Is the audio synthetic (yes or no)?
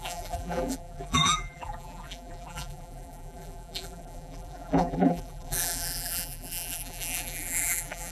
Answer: yes